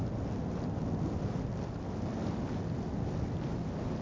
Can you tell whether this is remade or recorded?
recorded